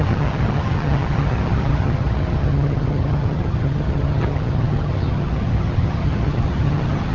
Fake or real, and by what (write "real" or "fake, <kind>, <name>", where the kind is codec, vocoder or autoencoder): fake, vocoder, HiFi-GAN